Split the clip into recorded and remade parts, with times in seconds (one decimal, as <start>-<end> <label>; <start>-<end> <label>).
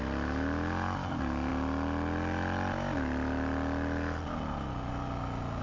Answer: 0.0-5.6 recorded